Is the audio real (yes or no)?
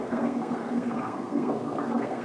no